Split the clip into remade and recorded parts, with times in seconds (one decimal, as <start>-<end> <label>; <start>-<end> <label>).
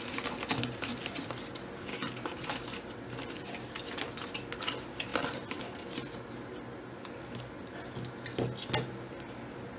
0.0-9.8 recorded